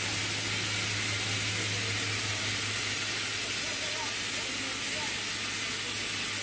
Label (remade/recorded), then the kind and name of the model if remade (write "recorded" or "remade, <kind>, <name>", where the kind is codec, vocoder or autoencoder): recorded